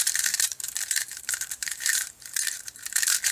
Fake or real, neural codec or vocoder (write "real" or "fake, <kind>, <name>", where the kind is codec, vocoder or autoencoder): fake, vocoder, BigVGAN v2